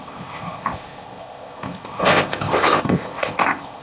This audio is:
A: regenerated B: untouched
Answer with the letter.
A